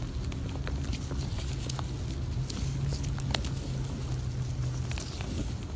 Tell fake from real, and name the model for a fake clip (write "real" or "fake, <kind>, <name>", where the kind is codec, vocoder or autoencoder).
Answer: real